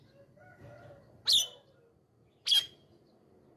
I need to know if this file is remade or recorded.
recorded